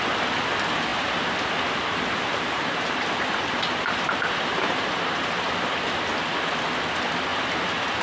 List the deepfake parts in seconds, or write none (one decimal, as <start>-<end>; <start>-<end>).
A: 0.9-1.5; 2.3-5.3; 7.3-8.0